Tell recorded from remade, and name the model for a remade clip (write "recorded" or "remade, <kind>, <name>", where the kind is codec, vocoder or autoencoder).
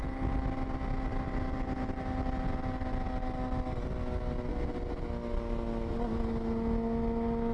recorded